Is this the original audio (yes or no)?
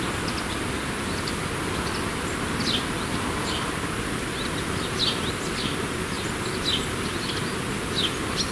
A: yes